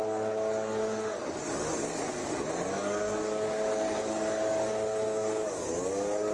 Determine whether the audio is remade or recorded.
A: remade